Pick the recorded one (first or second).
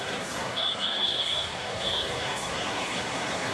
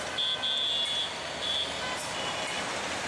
second